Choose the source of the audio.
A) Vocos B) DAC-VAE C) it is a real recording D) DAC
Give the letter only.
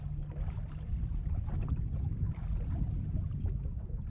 C